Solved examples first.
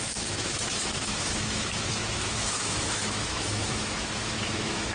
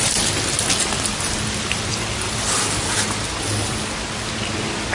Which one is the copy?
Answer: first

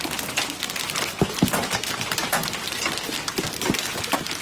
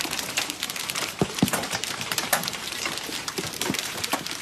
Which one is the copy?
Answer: second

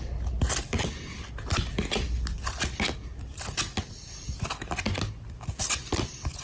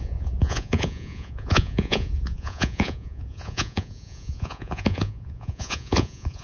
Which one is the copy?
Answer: second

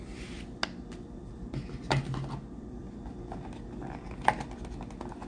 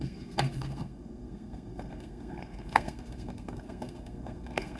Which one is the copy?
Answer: second